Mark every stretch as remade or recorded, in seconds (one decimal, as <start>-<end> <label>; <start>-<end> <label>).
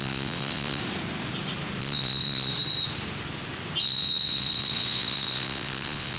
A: 0.0-0.8 remade; 0.8-1.8 recorded; 1.8-2.5 remade; 2.5-3.8 recorded; 3.8-6.2 remade